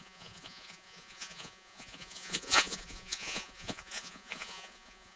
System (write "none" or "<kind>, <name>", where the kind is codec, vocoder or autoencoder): vocoder, Vocos